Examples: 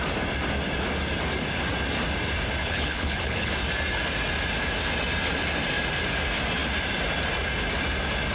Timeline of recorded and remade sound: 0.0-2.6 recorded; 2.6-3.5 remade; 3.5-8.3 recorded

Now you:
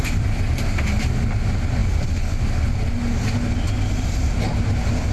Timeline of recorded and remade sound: 0.0-5.1 recorded

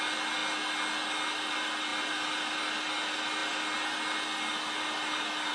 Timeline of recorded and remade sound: 0.0-5.5 recorded

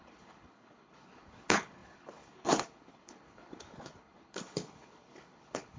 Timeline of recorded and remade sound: 0.0-5.8 remade